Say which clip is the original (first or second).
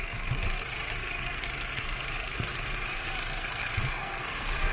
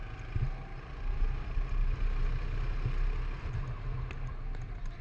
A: second